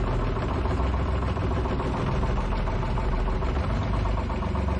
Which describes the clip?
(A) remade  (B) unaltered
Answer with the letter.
B